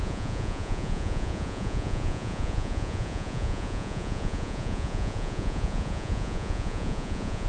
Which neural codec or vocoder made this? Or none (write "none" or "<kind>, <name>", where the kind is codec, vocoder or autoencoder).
vocoder, Vocos